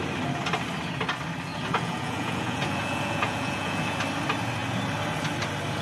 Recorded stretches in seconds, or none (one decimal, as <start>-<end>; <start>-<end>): 0.0-1.5; 4.0-5.8